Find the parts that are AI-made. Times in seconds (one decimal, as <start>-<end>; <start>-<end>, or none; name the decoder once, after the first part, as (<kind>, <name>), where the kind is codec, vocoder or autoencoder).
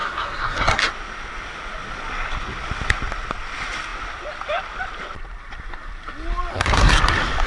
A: 0.0-0.9 (codec, SNAC); 6.5-7.0